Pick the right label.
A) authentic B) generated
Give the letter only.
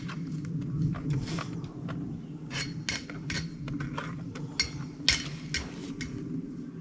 A